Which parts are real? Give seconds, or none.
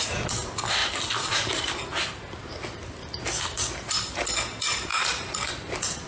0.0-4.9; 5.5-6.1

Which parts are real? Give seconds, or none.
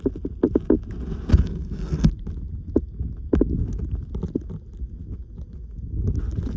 0.0-1.3; 2.1-6.6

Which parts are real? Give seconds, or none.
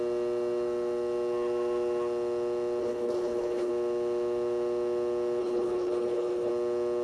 0.0-2.8; 3.7-5.4; 6.5-7.0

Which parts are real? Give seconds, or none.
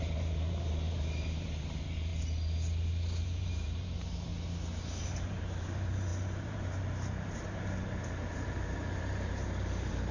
2.1-3.2; 4.3-5.1